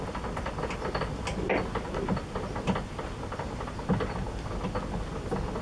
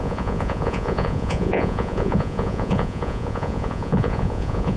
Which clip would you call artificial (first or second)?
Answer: second